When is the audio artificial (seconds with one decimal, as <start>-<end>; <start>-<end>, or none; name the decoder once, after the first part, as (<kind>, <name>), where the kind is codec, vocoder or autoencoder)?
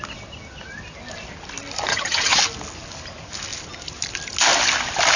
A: 1.9-2.4 (vocoder, HiFi-GAN)